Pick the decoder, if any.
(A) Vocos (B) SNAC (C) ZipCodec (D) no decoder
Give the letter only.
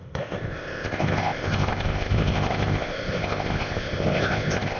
C